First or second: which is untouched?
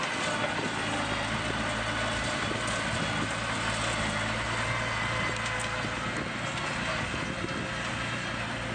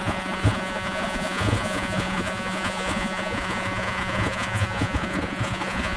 first